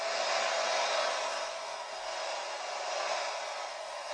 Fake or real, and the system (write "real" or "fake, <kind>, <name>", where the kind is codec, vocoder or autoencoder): real